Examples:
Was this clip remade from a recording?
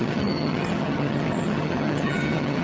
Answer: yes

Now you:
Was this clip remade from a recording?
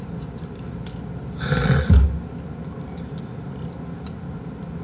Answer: no